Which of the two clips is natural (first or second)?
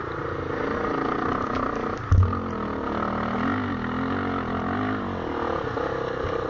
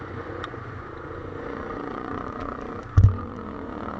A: first